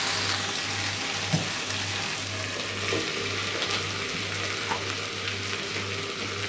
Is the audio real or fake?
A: real